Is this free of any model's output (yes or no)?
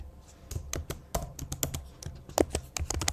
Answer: yes